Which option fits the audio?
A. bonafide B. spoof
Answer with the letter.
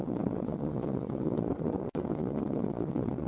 B